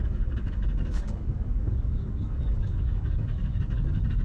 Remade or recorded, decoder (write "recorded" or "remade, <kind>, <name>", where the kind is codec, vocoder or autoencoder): remade, codec, DAC